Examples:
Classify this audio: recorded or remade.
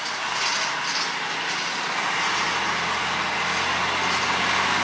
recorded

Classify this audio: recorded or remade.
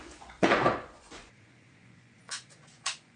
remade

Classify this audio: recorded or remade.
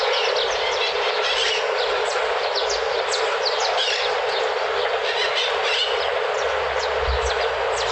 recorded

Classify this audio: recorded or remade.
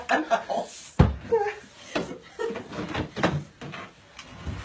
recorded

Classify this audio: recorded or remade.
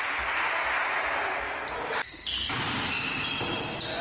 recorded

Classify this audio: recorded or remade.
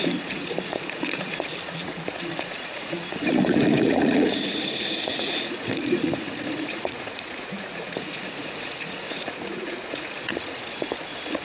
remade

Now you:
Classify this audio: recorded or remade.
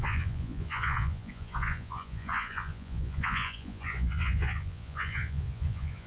remade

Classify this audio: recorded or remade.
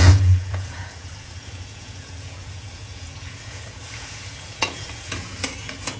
remade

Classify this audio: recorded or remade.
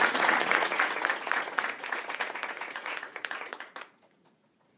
remade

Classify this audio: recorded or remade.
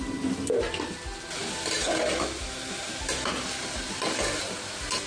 recorded